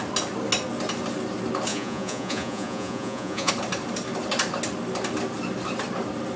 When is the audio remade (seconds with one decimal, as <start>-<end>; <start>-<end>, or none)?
1.7-3.5